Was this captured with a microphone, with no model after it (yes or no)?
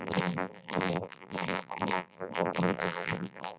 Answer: no